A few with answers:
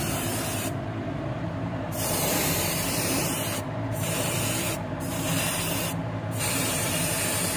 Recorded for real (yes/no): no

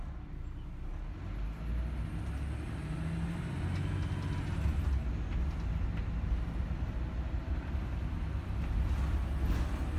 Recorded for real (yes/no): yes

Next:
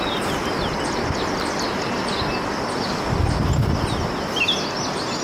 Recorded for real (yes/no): yes